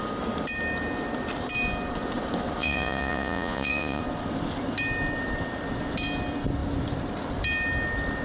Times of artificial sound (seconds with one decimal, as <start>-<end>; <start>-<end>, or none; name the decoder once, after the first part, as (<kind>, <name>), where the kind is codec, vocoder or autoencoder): 2.6-4.0 (vocoder, Vocos)